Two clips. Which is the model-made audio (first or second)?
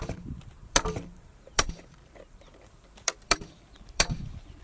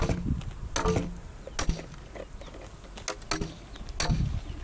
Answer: first